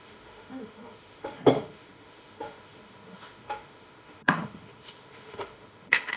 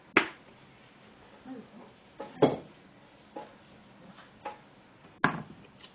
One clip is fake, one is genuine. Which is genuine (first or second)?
second